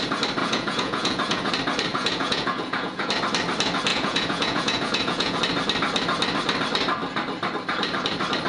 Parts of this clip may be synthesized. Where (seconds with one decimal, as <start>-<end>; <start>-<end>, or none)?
0.4-1.5; 1.9-3.1; 3.9-5.4